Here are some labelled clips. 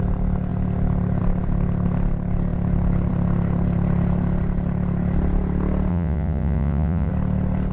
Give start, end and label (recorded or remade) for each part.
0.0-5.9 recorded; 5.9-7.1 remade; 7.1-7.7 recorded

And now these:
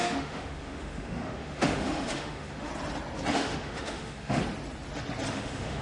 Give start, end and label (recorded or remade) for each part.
0.0-2.7 remade; 2.7-3.3 recorded; 3.3-4.4 remade; 4.4-5.3 recorded; 5.3-5.8 remade

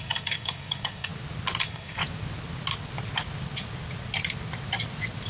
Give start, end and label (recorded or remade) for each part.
0.0-1.1 remade; 1.1-1.6 recorded; 1.6-2.0 remade; 2.0-5.3 recorded

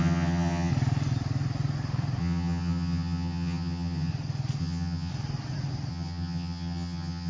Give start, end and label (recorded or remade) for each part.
0.0-0.7 remade; 0.7-2.2 recorded; 2.2-4.1 remade; 4.1-4.6 recorded; 4.6-5.1 remade; 5.1-5.9 recorded; 5.9-7.3 remade

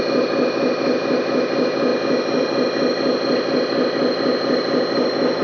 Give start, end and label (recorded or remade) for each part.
0.0-5.4 recorded

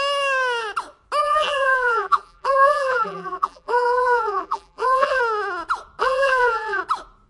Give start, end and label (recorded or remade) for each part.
0.0-1.2 recorded; 1.2-5.2 remade; 5.2-6.0 recorded; 6.0-6.8 remade; 6.8-7.3 recorded